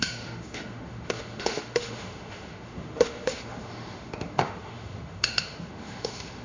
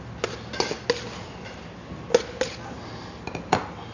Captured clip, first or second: second